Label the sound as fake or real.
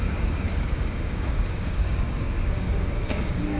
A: fake